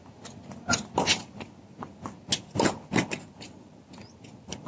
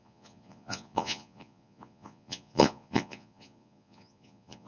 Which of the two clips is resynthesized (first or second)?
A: second